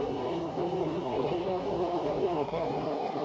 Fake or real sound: fake